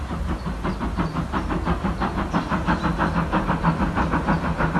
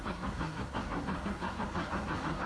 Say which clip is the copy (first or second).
second